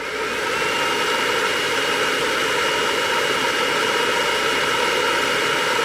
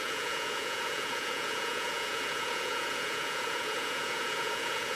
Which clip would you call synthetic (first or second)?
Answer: second